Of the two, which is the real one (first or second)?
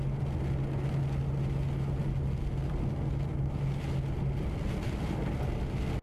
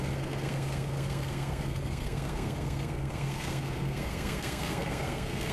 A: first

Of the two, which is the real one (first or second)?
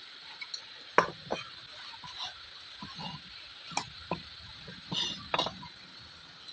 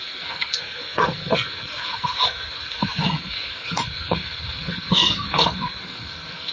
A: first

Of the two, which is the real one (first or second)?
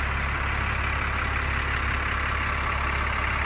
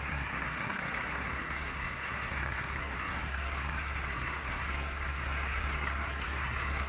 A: first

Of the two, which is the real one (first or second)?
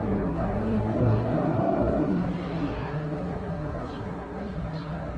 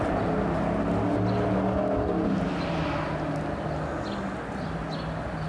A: second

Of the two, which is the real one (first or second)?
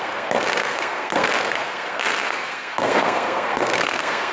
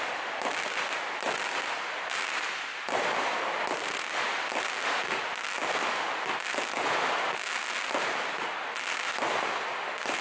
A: second